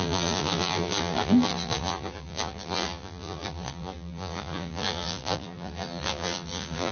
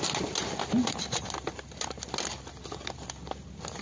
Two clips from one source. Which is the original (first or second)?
second